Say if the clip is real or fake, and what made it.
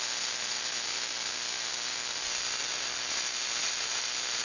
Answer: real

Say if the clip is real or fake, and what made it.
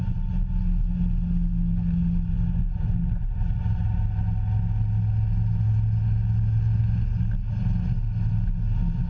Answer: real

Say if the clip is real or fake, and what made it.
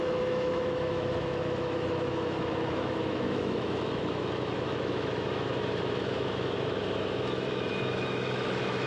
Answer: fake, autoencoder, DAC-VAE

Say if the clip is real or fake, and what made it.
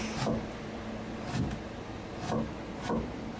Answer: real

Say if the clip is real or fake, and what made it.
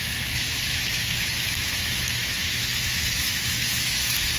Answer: fake, autoencoder, DAC-VAE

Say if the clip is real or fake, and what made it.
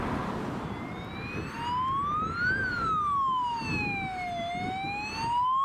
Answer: real